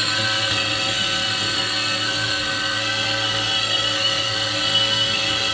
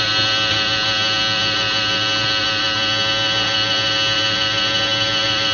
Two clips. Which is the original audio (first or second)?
second